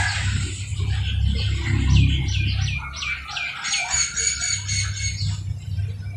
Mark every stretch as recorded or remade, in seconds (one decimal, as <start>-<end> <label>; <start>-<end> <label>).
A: 0.0-6.2 recorded